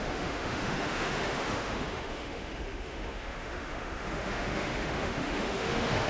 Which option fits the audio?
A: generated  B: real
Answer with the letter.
A